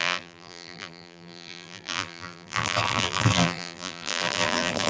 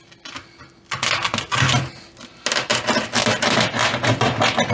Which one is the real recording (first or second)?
second